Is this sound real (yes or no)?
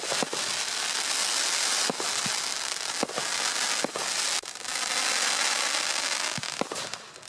yes